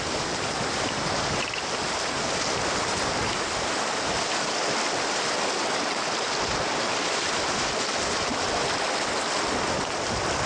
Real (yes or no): yes